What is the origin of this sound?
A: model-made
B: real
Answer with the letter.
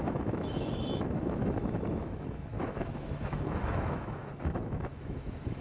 A